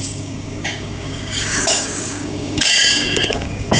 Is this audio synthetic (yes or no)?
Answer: yes